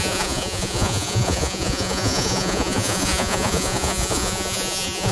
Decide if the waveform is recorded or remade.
remade